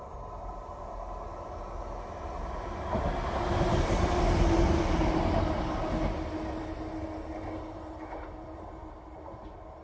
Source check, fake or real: real